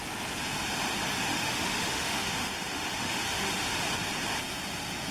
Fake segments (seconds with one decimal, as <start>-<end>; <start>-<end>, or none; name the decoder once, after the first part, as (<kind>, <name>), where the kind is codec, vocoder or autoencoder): 1.3-3.7 (autoencoder, DAC-VAE)